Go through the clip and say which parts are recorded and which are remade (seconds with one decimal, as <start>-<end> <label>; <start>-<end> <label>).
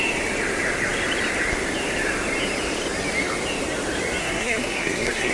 0.0-4.2 recorded; 4.2-5.3 remade